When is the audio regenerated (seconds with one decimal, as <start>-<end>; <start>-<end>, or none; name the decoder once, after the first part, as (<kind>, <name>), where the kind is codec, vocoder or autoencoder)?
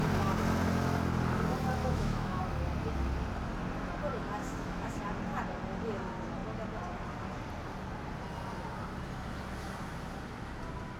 1.8-2.4 (autoencoder, DAC-VAE); 4.4-5.0